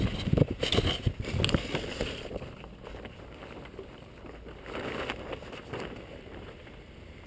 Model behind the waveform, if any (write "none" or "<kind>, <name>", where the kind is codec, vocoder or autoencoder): none